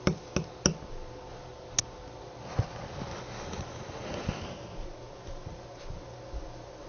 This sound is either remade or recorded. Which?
recorded